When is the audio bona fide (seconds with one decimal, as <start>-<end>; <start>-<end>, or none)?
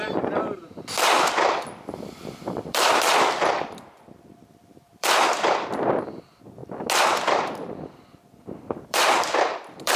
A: 6.6-7.1